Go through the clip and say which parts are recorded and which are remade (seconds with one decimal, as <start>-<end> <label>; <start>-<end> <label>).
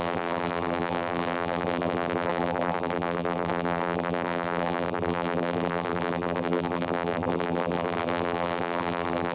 0.0-9.3 remade